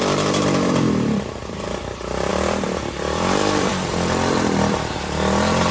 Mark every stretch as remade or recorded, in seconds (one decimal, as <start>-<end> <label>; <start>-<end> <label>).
0.0-5.7 remade